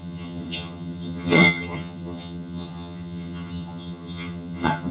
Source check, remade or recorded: remade